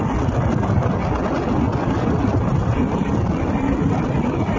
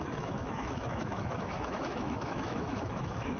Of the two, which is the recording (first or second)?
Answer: first